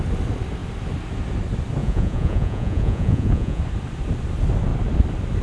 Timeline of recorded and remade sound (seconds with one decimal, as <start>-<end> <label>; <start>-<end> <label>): 0.0-1.8 recorded; 1.8-3.6 remade; 3.6-5.4 recorded